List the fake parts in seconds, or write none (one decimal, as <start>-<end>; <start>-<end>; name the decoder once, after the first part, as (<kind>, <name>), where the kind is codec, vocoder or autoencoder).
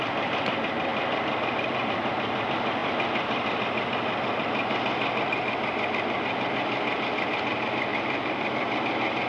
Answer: 0.9-2.1 (vocoder, BigVGAN v2); 7.9-8.8